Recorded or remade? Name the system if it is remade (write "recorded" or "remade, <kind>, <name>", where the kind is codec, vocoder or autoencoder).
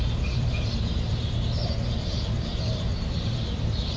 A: remade, vocoder, BigVGAN v2